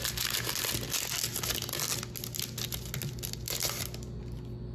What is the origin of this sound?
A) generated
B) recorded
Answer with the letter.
B